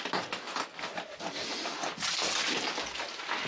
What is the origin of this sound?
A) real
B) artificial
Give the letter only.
A